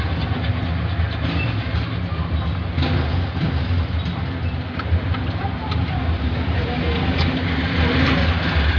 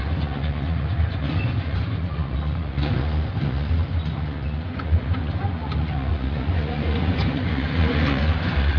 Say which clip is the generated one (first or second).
second